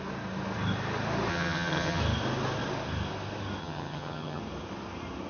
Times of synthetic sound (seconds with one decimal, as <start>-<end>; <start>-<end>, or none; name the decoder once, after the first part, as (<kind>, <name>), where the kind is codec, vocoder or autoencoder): 1.3-2.0 (vocoder, HiFi-GAN); 3.6-4.4